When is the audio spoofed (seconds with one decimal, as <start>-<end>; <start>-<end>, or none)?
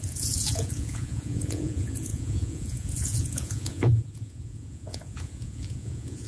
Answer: 0.0-6.3